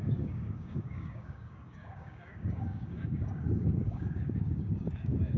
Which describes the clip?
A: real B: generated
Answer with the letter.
B